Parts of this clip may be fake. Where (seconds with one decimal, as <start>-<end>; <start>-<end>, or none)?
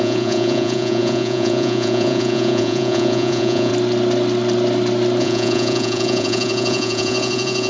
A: 0.0-3.7; 5.2-7.7